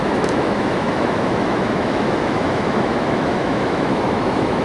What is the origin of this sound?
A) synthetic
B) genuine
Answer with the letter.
A